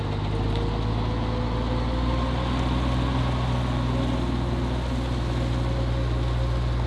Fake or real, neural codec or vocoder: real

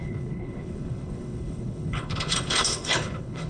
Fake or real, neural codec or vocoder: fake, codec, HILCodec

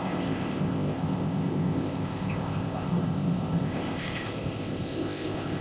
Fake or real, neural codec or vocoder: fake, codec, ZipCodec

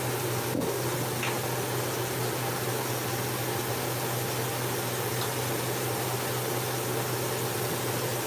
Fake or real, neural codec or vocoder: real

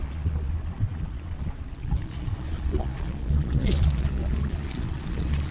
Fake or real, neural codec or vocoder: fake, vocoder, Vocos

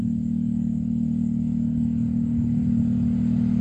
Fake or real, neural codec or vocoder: real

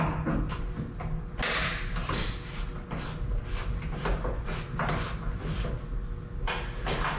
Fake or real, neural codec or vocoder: real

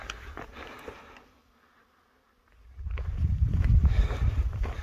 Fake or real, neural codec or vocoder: real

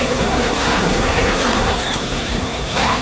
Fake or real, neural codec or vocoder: fake, codec, SNAC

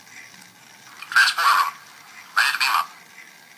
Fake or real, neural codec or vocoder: real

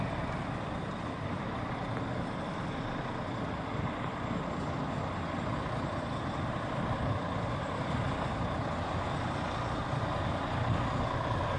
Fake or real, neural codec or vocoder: real